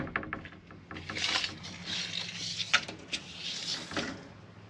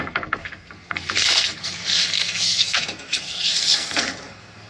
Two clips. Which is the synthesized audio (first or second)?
second